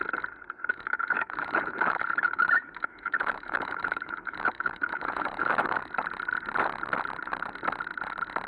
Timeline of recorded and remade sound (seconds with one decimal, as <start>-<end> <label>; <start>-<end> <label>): 0.0-0.7 recorded; 0.7-5.8 remade; 5.8-8.5 recorded